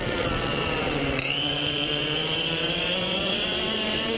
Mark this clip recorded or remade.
remade